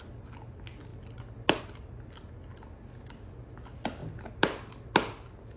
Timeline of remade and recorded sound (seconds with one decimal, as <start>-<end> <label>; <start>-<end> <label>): 0.0-5.6 recorded